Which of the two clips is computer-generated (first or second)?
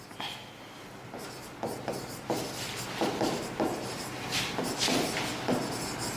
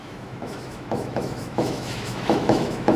second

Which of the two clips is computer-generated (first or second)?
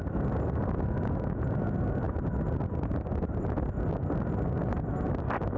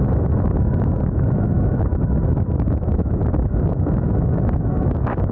second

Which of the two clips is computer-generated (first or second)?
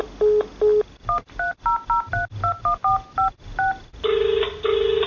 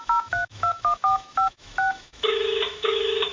second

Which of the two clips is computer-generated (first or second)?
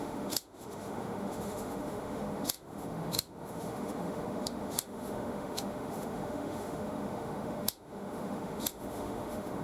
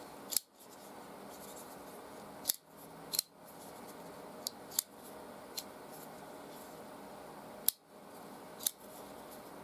first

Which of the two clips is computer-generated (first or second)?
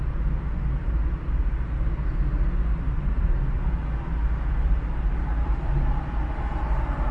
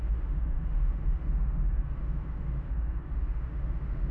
second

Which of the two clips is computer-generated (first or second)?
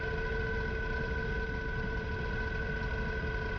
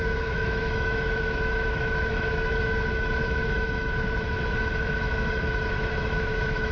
second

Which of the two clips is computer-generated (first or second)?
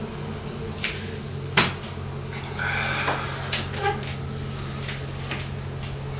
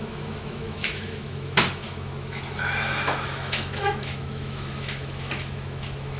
second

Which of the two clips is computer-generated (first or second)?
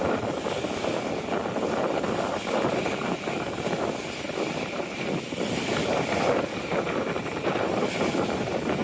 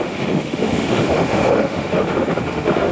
second